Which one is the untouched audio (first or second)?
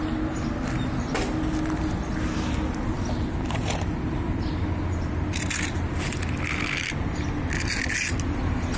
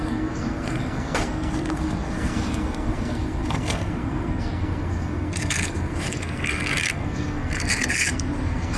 first